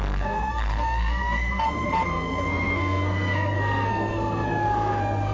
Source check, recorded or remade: remade